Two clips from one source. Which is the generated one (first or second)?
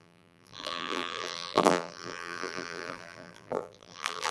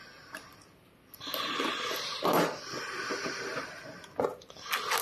first